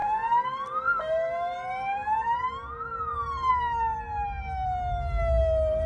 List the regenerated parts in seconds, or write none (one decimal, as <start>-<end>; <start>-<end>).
0.0-3.5